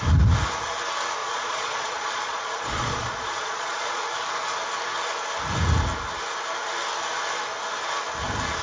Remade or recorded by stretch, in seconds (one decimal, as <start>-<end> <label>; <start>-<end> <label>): 0.0-1.2 recorded; 1.2-4.0 remade; 4.0-8.6 recorded